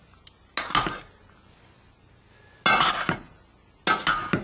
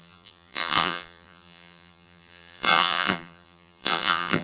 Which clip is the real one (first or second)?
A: first